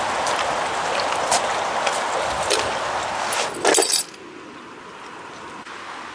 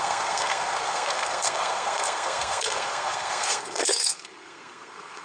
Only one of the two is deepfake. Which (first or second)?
second